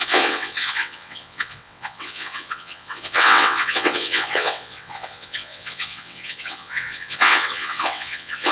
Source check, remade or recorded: remade